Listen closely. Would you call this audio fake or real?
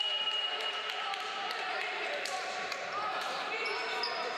fake